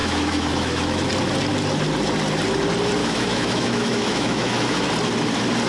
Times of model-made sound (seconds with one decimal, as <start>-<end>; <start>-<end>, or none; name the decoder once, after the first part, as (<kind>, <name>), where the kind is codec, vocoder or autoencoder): 0.0-1.1 (autoencoder, DAC-VAE); 3.0-4.9

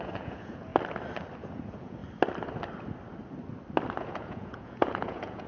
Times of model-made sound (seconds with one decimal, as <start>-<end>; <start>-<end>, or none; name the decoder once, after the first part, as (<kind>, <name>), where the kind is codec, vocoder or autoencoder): 0.0-0.7 (vocoder, Vocos); 1.4-2.0; 4.0-5.5

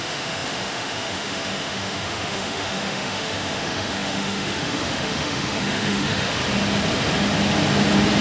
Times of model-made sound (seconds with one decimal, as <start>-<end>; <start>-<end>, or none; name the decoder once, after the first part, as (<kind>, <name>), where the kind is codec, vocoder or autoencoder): 0.0-6.4 (autoencoder, DAC-VAE)

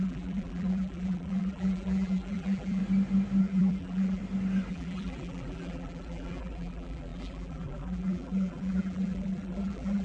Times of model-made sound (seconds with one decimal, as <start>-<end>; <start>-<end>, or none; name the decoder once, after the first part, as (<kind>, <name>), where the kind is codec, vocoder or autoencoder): 0.0-2.8 (vocoder, BigVGAN v2); 3.4-4.2; 4.7-10.0